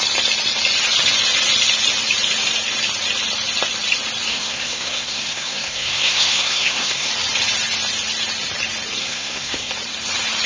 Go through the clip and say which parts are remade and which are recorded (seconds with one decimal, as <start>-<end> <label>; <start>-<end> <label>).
0.0-4.3 recorded; 4.3-7.1 remade; 7.1-9.0 recorded; 9.0-9.7 remade; 9.7-10.5 recorded